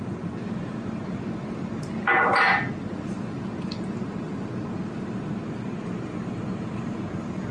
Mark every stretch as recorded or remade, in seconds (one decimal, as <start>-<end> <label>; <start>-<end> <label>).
0.0-2.3 remade; 2.3-2.9 recorded; 2.9-7.5 remade